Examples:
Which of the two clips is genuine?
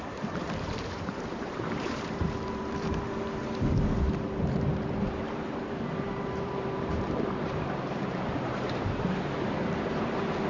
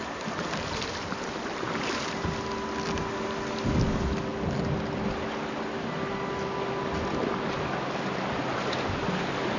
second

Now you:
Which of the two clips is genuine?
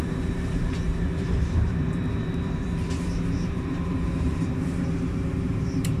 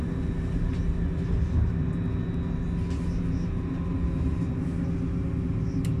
second